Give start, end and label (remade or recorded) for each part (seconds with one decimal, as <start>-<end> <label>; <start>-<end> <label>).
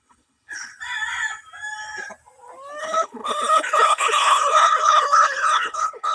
0.0-0.7 remade; 0.7-2.8 recorded; 2.8-6.1 remade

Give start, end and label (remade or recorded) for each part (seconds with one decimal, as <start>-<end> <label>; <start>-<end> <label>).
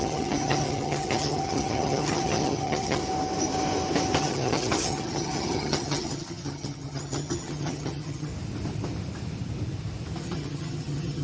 0.0-3.0 remade; 3.0-4.2 recorded; 4.2-8.3 remade; 8.3-10.2 recorded; 10.2-11.2 remade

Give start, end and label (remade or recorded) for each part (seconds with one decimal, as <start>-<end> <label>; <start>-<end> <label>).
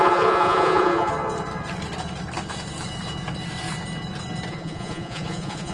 0.0-1.1 remade; 1.1-4.5 recorded; 4.5-5.7 remade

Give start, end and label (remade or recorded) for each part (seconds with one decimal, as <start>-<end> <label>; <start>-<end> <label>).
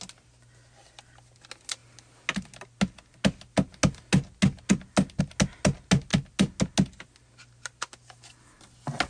0.0-9.1 recorded